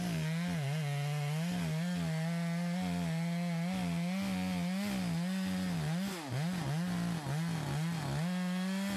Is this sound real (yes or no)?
yes